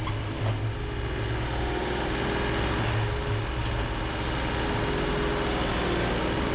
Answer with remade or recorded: recorded